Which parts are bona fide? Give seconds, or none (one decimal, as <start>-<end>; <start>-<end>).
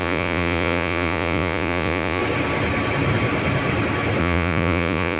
2.2-4.2